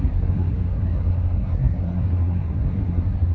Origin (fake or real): fake